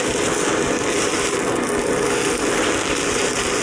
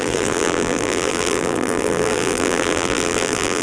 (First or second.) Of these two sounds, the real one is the first